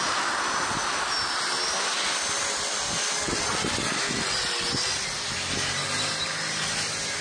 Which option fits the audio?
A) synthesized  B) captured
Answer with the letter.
B